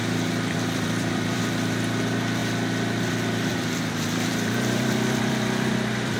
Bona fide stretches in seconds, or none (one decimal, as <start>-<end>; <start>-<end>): 1.4-3.5